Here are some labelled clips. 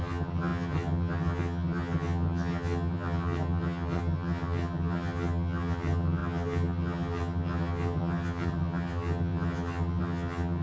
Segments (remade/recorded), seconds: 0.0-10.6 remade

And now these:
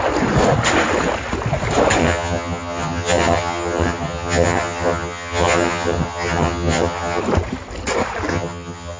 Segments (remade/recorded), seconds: 0.0-2.0 recorded; 2.0-7.2 remade; 7.2-8.3 recorded; 8.3-9.0 remade

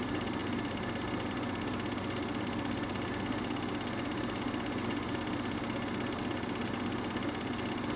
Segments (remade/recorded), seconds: 0.0-8.0 recorded

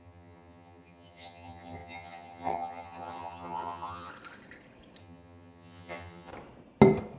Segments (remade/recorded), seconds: 0.0-4.1 remade; 4.1-5.0 recorded; 5.0-6.3 remade; 6.3-7.2 recorded

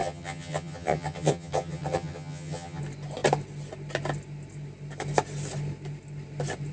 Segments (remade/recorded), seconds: 0.0-2.8 remade; 2.8-6.7 recorded